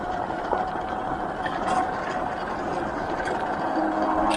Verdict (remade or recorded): recorded